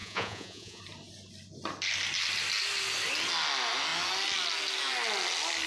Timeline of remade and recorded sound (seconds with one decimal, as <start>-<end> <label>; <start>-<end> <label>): 0.0-0.8 remade; 0.8-5.7 recorded